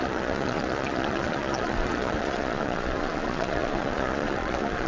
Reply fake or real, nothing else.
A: fake